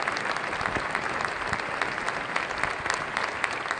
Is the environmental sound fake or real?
real